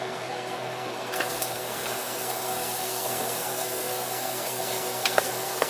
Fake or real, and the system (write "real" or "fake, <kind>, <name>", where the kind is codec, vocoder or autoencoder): fake, codec, SNAC